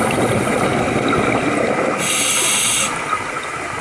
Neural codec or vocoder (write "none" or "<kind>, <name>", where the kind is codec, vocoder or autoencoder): none